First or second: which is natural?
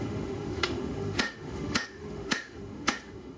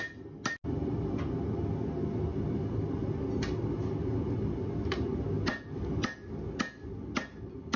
second